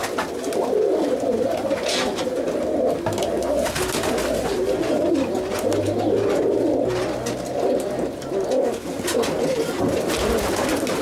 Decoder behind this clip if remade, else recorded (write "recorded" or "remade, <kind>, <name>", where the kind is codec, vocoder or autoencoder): recorded